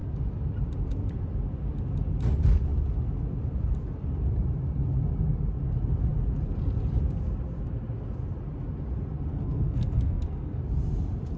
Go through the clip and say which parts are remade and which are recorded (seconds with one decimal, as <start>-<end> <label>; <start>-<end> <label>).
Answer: 0.0-9.3 recorded; 9.3-10.6 remade; 10.6-11.4 recorded